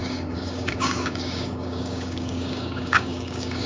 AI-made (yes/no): yes